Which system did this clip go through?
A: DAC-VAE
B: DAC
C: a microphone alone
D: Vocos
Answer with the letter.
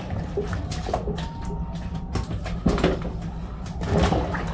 C